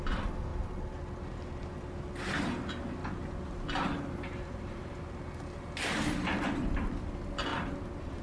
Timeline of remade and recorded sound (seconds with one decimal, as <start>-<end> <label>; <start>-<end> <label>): 0.0-0.5 recorded; 0.5-1.0 remade; 1.0-3.0 recorded; 3.0-4.8 remade; 4.8-7.5 recorded; 7.5-8.2 remade